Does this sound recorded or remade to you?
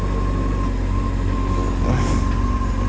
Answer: recorded